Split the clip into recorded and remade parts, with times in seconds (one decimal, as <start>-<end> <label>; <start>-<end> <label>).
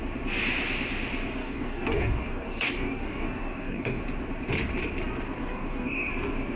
0.0-1.4 recorded; 1.4-4.0 remade; 4.0-5.4 recorded; 5.4-6.1 remade; 6.1-6.6 recorded